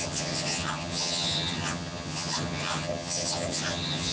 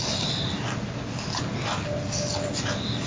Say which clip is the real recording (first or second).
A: second